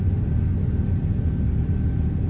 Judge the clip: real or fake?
real